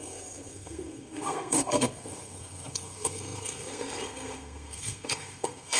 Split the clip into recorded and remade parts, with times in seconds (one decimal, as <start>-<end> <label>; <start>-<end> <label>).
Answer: 0.0-5.8 remade